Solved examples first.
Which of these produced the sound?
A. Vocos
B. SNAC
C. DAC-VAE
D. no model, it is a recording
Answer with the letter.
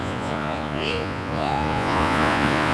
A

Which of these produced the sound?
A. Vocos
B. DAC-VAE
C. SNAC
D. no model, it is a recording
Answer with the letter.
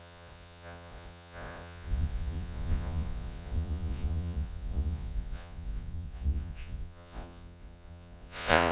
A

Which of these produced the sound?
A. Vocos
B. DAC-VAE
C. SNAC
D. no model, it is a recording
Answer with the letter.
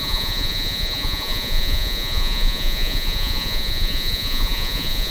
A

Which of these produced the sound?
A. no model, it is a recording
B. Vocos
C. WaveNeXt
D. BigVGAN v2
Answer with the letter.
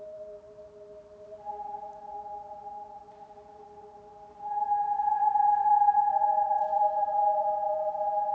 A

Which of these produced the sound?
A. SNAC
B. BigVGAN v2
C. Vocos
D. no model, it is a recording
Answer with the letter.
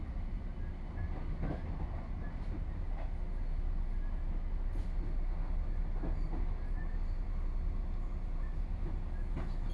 D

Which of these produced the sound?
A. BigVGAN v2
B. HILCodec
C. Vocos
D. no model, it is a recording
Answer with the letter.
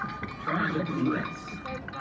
D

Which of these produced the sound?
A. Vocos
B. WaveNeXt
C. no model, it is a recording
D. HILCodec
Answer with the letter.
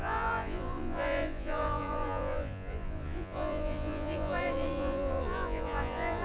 A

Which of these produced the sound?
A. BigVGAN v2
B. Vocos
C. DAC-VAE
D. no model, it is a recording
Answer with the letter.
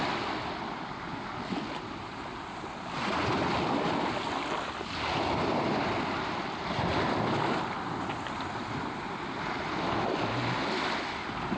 D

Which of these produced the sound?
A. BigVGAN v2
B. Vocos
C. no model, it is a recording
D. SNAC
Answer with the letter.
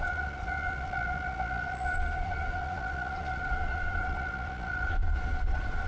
B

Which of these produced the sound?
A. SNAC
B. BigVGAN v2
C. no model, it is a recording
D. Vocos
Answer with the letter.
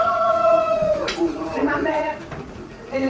D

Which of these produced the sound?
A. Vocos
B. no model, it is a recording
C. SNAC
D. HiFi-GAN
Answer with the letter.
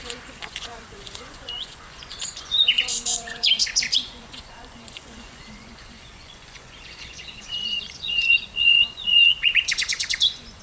A